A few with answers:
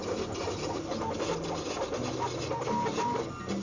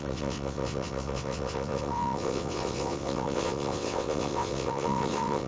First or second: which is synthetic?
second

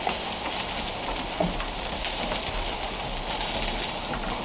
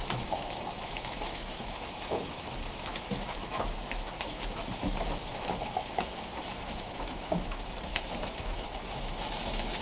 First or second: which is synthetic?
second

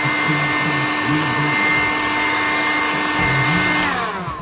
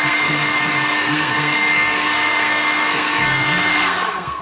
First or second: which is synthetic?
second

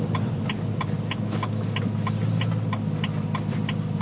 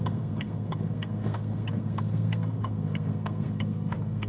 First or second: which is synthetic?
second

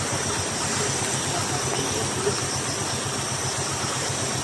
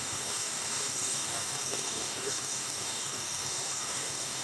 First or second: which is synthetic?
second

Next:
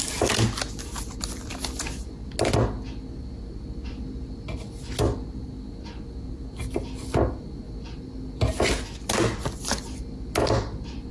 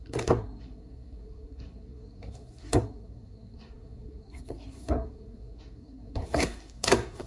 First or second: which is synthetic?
second